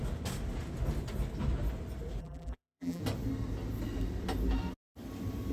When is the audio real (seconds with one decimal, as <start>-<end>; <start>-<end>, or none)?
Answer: 0.0-2.2; 3.0-5.5